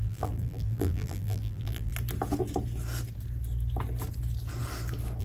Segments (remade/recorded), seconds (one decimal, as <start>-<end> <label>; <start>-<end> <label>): 0.0-1.9 remade; 1.9-5.2 recorded